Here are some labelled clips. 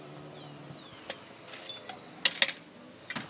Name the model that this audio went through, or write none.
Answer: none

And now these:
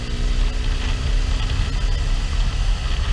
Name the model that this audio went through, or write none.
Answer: none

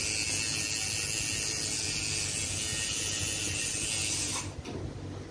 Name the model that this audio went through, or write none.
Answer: none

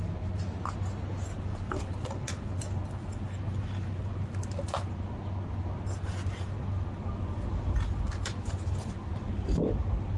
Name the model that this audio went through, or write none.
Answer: none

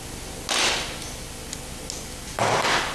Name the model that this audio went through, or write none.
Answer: none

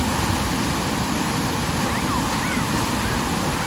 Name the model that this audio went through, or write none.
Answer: none